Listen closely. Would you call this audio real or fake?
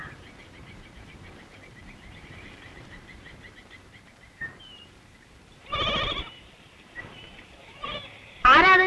fake